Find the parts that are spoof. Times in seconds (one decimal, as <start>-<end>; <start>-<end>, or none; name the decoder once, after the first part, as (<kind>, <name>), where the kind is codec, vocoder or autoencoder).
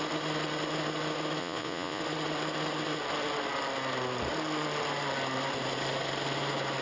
1.4-2.0 (vocoder, Vocos)